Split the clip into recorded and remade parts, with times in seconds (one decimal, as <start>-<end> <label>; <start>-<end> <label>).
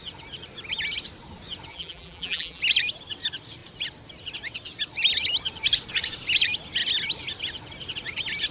0.0-1.7 recorded; 1.7-2.6 remade; 2.6-8.5 recorded